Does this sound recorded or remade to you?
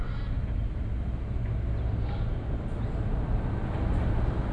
recorded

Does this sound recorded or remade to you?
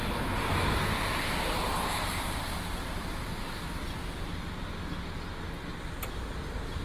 recorded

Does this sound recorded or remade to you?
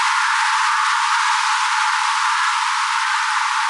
recorded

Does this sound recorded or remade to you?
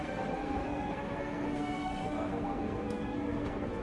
remade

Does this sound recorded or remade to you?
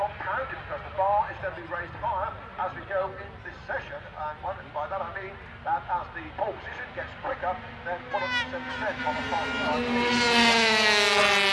recorded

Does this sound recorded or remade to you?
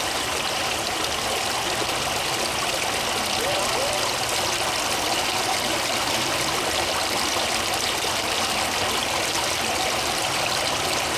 recorded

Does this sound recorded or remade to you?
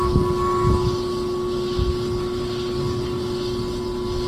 recorded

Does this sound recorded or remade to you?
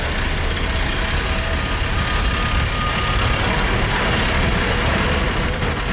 recorded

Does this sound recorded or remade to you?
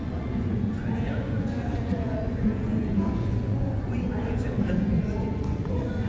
remade